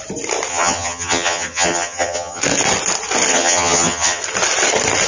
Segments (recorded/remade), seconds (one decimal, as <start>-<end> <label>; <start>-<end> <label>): 0.0-0.5 recorded; 0.5-2.4 remade; 2.4-3.3 recorded; 3.3-4.2 remade; 4.2-5.1 recorded